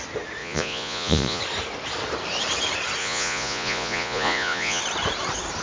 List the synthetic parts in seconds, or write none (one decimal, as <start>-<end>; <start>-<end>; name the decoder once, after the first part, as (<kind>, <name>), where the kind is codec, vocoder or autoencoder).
0.4-1.4 (vocoder, Vocos); 3.0-4.8